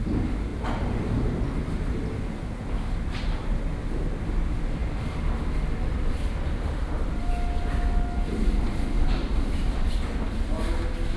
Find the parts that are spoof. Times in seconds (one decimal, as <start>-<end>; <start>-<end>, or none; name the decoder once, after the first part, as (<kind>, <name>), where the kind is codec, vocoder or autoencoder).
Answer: 4.8-7.3 (vocoder, BigVGAN v2)